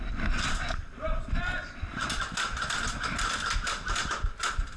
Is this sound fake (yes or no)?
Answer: no